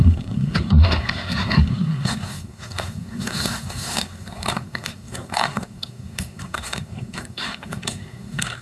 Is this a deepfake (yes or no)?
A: yes